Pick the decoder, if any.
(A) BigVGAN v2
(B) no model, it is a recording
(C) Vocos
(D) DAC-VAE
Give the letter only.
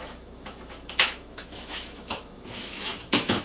D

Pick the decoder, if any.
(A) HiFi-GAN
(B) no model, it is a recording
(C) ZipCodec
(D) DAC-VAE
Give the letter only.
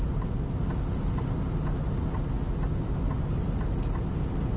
B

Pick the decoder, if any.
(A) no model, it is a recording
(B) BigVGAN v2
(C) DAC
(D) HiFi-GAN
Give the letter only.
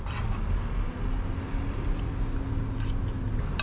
A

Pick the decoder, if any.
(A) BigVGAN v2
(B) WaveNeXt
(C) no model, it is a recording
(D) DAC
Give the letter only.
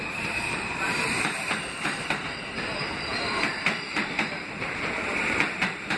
A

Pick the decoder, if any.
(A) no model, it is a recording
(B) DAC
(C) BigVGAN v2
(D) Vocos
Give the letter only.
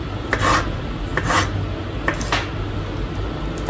A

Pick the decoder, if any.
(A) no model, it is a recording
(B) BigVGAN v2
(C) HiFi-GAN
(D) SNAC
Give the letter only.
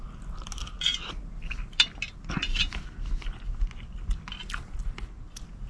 A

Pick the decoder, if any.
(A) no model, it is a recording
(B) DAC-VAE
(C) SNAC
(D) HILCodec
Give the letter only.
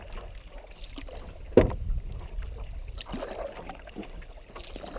A